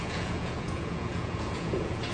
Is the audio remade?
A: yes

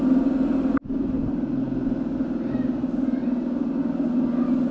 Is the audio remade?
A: no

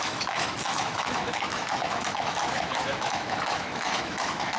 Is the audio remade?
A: yes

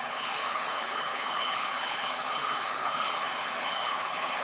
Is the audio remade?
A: yes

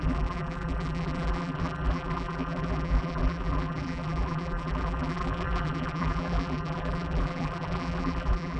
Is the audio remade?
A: yes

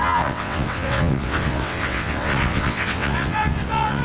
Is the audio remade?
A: yes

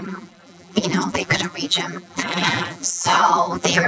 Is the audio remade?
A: yes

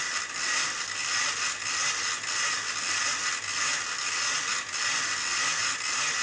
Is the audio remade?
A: no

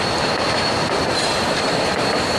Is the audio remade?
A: yes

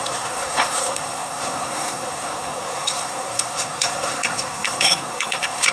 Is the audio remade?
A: yes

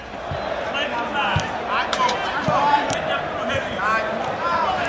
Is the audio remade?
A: no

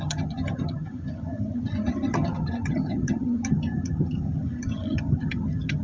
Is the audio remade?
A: yes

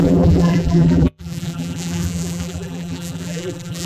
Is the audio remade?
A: yes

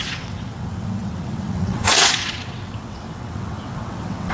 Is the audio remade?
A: yes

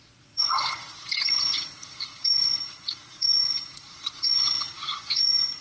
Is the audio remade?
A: yes